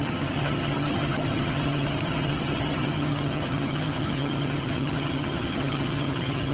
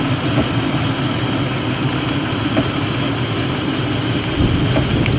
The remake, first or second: first